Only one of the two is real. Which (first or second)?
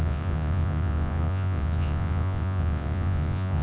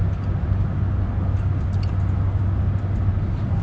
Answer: second